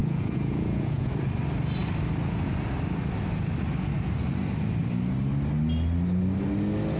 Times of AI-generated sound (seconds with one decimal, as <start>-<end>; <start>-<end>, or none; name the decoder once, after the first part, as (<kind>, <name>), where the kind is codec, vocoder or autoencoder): 0.0-1.1 (vocoder, Vocos)